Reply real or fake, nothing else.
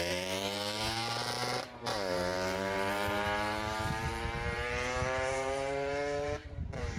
fake